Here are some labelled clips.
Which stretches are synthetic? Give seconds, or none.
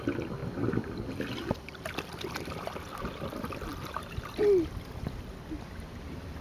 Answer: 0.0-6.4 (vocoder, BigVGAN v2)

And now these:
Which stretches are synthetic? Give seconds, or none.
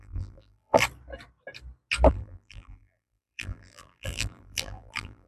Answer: 0.0-0.8 (vocoder, BigVGAN v2); 2.1-5.3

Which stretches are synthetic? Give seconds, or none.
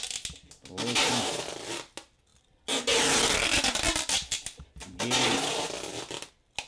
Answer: none